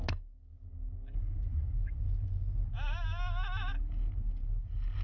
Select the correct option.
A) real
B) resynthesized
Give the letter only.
A